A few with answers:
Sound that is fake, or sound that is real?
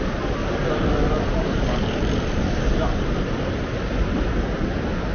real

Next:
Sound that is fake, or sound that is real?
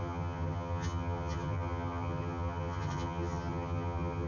fake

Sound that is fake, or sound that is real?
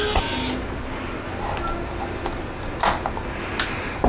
real